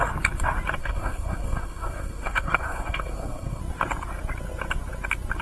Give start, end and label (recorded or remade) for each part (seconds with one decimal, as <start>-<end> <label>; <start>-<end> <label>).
0.0-0.8 recorded; 0.8-3.6 remade; 3.6-5.4 recorded